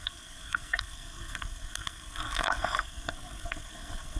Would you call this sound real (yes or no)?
no